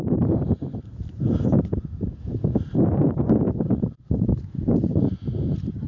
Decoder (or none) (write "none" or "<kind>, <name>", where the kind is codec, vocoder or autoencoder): vocoder, BigVGAN v2